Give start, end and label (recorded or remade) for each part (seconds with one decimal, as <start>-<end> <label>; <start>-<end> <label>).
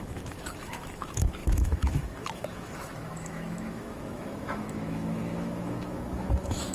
0.0-6.7 remade